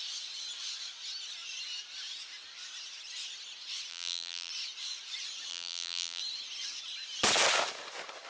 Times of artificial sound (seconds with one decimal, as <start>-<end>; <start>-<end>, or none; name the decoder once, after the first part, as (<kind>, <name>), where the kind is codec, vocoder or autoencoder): 3.9-4.5 (vocoder, BigVGAN v2); 5.5-6.2